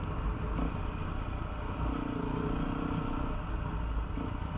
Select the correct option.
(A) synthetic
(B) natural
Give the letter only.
B